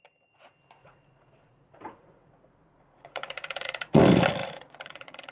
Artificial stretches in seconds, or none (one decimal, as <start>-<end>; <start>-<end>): 0.8-4.0; 4.4-5.3

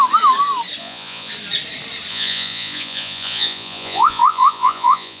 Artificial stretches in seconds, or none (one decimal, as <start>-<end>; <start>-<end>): 0.8-1.3; 2.1-5.2